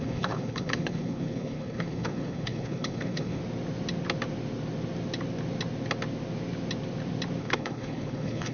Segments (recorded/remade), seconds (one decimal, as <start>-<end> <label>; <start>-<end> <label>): 0.0-3.4 remade; 3.4-7.4 recorded; 7.4-8.5 remade